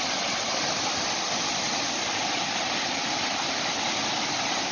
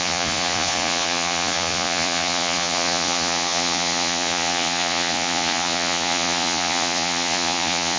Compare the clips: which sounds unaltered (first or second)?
first